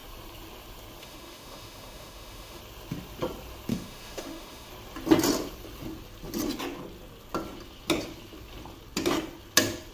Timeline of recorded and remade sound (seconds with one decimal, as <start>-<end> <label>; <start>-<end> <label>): 0.0-1.0 recorded; 1.0-2.6 remade; 2.6-3.7 recorded; 3.7-4.7 remade; 4.7-9.9 recorded